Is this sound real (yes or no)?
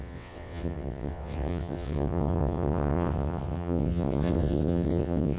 no